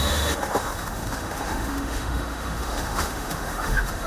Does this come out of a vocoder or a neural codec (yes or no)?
yes